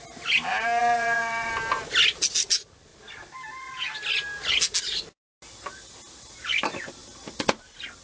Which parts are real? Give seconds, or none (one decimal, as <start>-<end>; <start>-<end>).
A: 0.0-0.8; 1.5-8.0